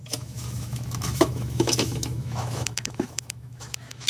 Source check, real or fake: fake